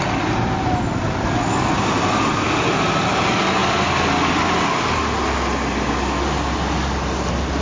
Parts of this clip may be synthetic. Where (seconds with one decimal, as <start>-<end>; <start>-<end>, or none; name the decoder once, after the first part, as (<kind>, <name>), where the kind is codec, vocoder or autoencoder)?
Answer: none